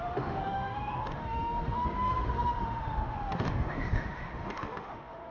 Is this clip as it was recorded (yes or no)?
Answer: no